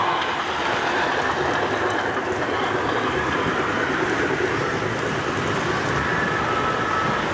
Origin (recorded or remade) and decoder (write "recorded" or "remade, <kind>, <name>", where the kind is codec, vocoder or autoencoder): recorded